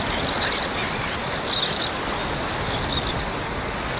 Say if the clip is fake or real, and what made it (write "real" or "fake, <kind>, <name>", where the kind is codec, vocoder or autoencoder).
real